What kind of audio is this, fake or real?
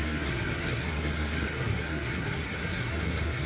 fake